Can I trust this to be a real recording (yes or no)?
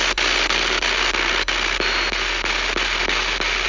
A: yes